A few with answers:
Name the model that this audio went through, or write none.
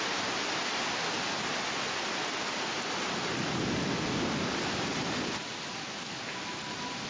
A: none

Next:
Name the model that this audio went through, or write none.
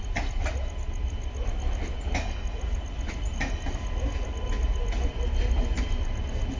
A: none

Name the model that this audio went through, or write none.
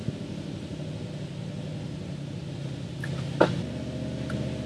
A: none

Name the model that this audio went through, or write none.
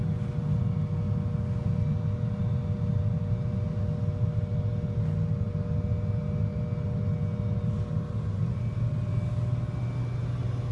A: none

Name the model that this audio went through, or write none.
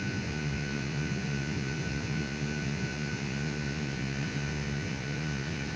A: vocoder, Vocos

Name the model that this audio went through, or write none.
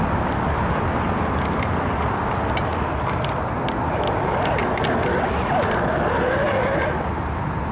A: none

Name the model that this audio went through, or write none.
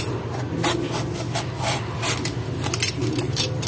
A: none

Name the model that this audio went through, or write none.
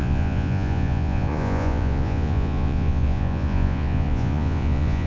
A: vocoder, Vocos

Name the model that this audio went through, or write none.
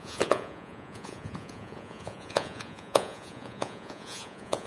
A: vocoder, Vocos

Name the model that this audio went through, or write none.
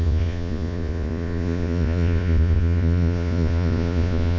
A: vocoder, Vocos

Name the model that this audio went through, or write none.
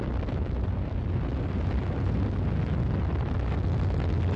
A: none